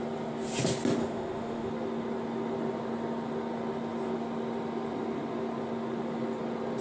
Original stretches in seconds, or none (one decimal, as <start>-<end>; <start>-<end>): 0.0-1.0; 1.7-6.8